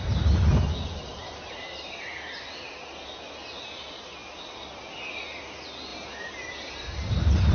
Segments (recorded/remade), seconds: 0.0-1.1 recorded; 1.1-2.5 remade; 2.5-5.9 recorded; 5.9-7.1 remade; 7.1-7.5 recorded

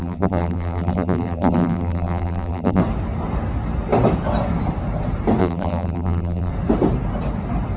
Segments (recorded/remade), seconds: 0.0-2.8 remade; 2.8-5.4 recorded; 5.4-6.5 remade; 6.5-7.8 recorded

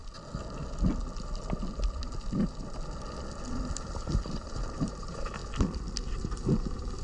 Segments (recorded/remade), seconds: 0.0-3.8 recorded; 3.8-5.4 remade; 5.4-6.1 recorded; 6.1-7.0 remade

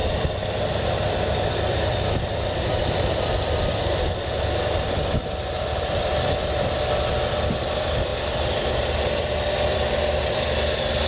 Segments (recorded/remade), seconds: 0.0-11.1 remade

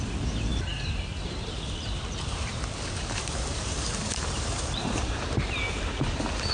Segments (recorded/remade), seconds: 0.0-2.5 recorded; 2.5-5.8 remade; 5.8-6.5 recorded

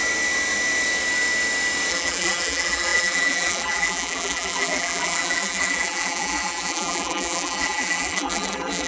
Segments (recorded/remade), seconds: 0.0-1.9 recorded; 1.9-8.9 remade